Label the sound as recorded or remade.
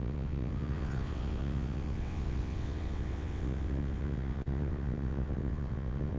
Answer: remade